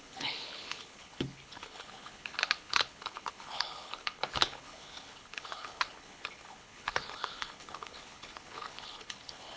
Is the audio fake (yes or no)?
yes